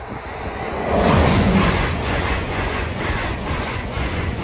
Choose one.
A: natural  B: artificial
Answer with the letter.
B